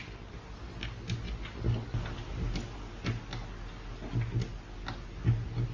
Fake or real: real